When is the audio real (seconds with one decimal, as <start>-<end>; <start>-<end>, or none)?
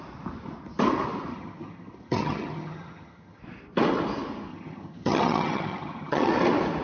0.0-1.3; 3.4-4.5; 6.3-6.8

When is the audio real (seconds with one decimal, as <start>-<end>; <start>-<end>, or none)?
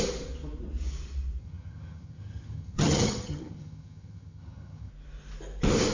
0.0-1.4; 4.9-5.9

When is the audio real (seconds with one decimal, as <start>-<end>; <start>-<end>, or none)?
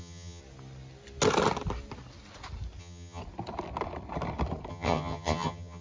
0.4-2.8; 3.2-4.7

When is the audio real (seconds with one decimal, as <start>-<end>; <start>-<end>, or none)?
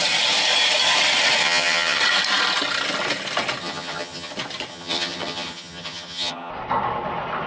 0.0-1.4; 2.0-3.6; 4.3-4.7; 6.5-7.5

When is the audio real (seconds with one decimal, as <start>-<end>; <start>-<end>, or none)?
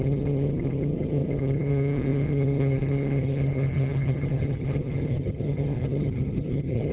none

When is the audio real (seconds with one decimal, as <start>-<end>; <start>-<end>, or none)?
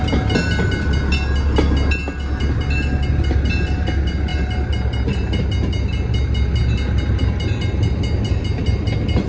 0.0-9.3